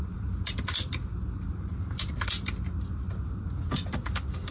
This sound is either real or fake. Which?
real